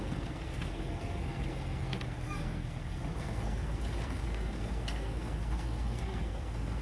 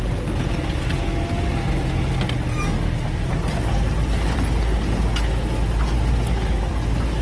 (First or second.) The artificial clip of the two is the first